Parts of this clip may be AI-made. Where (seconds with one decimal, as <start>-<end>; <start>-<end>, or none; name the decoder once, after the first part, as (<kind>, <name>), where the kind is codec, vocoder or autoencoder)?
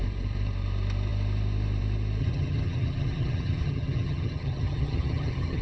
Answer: 2.2-5.6 (vocoder, HiFi-GAN)